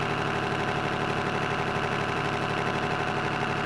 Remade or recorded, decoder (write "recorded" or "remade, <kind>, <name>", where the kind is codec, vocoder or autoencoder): recorded